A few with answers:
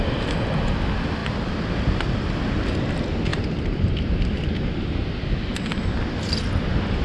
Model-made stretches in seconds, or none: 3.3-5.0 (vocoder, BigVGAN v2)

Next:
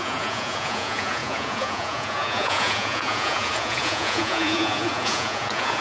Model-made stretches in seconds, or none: 0.0-5.8 (vocoder, Vocos)

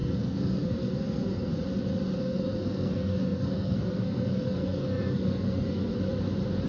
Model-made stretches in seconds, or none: 0.0-1.5 (codec, SNAC); 2.2-5.9

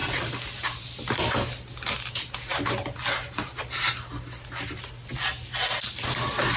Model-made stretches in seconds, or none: none

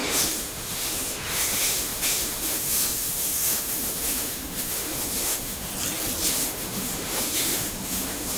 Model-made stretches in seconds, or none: 0.0-5.7 (autoencoder, DAC-VAE); 6.3-8.4